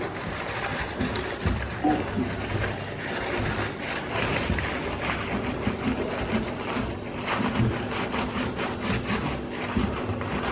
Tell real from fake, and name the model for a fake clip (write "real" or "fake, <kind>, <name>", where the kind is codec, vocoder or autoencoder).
real